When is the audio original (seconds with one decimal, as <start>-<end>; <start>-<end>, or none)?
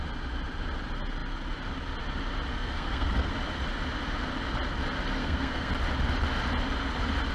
0.0-2.5; 3.3-5.2; 5.7-7.3